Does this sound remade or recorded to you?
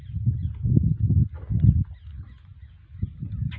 recorded